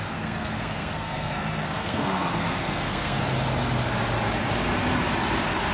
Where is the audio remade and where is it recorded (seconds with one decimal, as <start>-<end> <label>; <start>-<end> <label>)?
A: 0.0-3.2 remade; 3.2-5.7 recorded